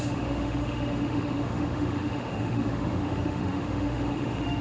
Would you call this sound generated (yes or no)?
yes